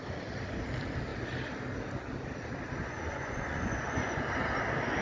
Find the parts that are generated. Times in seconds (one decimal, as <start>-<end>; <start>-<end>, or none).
2.8-4.2